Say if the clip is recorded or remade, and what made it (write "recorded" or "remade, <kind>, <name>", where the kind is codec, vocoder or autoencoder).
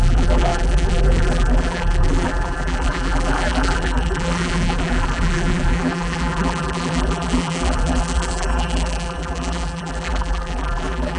remade, vocoder, BigVGAN v2